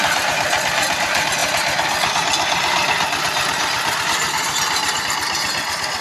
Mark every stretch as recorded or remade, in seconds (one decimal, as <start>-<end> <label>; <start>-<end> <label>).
0.0-6.0 recorded